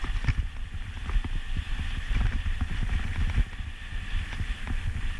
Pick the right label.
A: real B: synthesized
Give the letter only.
A